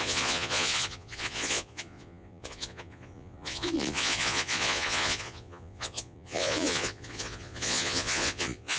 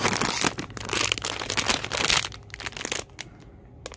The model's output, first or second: first